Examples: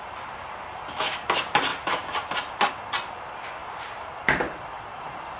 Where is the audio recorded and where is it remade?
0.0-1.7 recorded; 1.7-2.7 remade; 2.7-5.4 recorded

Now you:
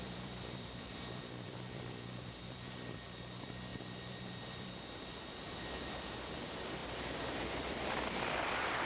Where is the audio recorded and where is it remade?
0.0-8.9 remade